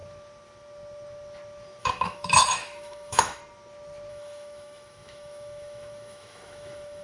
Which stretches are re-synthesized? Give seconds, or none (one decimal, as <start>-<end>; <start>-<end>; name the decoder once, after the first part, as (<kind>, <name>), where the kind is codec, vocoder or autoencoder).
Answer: 1.8-3.4 (autoencoder, DAC-VAE); 4.1-7.0